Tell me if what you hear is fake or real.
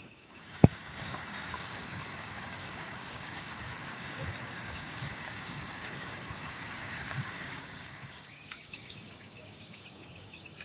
fake